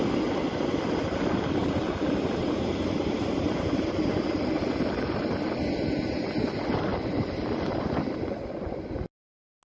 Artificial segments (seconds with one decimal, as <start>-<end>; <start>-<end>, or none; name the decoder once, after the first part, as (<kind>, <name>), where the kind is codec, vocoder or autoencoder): 1.6-4.5 (vocoder, BigVGAN v2)